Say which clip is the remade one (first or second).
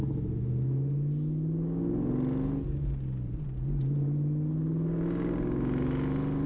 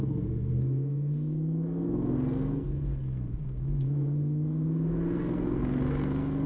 second